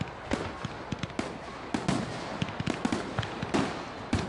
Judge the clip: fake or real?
real